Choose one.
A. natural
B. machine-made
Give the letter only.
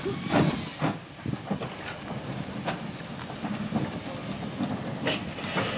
A